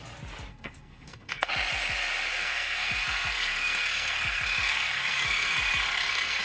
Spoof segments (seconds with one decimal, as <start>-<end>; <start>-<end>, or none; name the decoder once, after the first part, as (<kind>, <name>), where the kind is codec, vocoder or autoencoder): 0.5-1.5 (codec, SNAC); 2.3-6.4